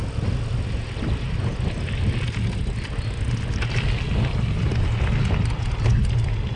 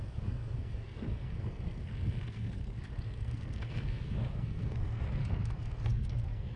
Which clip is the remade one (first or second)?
second